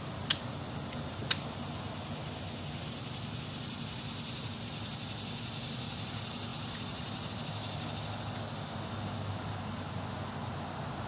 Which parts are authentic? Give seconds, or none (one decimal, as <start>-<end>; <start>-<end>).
0.0-11.1